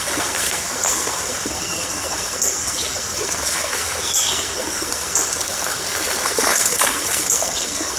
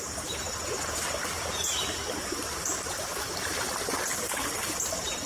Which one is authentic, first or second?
second